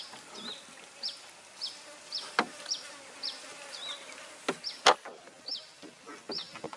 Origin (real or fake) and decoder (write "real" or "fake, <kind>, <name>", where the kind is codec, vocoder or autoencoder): real